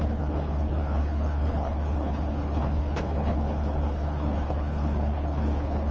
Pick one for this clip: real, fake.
fake